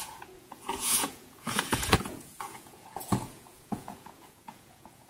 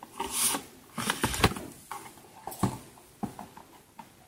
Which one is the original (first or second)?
second